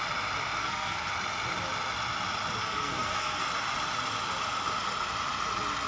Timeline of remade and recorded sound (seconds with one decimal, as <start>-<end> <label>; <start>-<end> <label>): 0.0-0.6 recorded; 0.6-1.1 remade; 1.1-2.6 recorded; 2.6-3.4 remade; 3.4-5.9 recorded